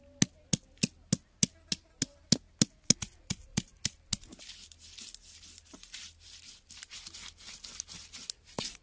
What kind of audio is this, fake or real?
real